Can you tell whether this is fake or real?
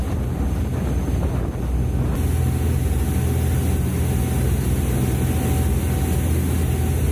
real